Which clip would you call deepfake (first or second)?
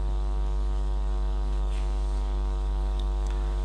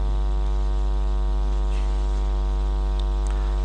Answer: first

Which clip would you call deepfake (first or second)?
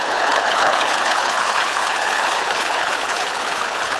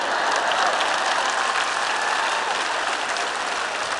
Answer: first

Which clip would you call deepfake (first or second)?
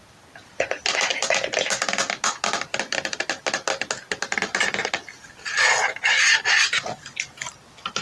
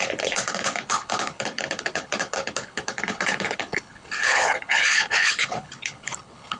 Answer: second